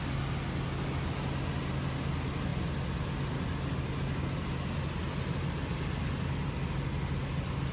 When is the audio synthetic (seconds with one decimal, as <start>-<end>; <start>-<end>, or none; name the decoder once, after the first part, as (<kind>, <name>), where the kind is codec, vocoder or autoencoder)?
none